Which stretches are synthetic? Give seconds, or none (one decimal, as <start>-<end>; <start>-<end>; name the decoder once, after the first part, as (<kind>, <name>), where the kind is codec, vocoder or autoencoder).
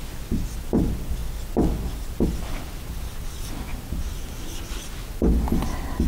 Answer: none